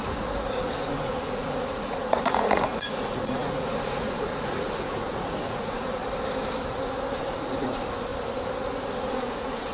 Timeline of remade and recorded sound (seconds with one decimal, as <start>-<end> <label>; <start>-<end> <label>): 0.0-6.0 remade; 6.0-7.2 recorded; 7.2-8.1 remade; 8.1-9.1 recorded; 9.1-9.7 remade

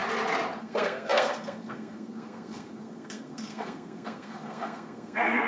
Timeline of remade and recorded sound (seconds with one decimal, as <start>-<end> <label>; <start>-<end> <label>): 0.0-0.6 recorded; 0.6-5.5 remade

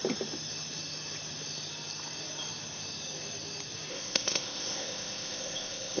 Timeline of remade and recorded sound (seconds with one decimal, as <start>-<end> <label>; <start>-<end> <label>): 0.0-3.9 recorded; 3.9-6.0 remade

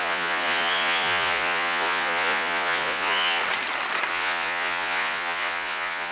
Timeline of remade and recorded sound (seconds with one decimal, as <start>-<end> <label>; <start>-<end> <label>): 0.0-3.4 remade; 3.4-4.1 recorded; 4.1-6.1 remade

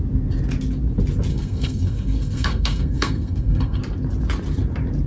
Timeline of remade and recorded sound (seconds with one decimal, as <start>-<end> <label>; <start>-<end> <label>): 0.0-1.3 recorded; 1.3-3.8 remade; 3.8-5.1 recorded